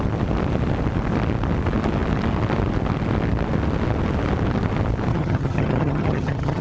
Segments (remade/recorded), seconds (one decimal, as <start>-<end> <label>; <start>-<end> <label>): 0.0-5.1 recorded; 5.1-6.6 remade